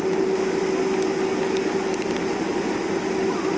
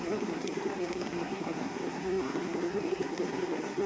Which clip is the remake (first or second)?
second